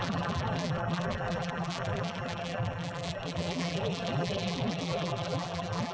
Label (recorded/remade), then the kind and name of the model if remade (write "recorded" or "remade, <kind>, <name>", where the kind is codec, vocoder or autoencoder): remade, vocoder, BigVGAN v2